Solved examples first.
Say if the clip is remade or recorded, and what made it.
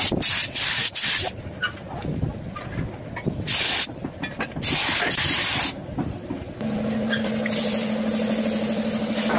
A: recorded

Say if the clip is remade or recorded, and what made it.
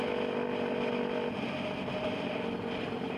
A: recorded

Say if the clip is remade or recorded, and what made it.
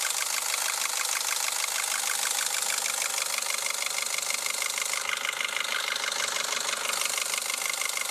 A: recorded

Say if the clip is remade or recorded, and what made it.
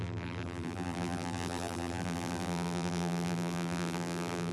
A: remade, vocoder, BigVGAN v2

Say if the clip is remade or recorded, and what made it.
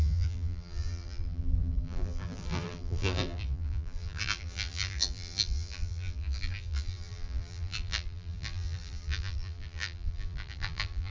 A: remade, vocoder, BigVGAN v2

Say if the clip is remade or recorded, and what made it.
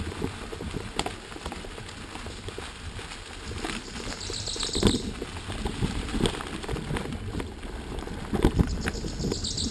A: recorded